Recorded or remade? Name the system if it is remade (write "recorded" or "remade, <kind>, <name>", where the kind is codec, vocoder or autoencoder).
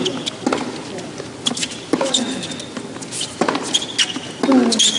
recorded